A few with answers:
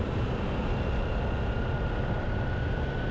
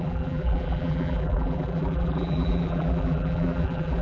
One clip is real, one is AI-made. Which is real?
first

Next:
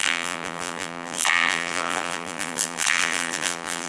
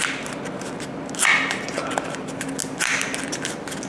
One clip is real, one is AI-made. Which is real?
second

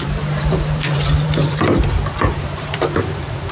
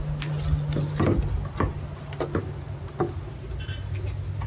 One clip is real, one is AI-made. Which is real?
second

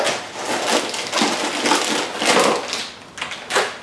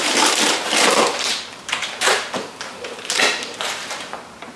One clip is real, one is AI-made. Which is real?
first